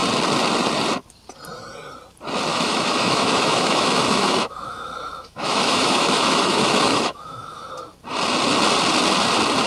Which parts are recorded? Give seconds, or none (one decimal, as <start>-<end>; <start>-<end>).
0.0-2.5; 7.7-9.7